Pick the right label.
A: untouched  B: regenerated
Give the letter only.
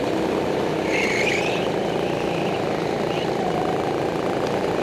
A